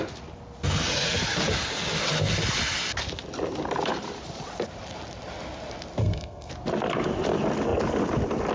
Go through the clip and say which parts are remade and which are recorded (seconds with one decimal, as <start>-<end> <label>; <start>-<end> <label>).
0.0-6.0 recorded; 6.0-6.5 remade; 6.5-8.5 recorded